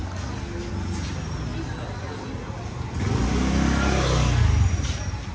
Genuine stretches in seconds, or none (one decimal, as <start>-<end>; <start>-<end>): 0.0-0.7; 1.5-4.7